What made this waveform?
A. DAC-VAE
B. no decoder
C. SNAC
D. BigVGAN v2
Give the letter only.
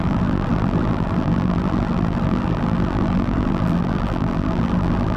D